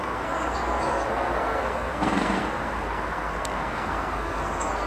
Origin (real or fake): fake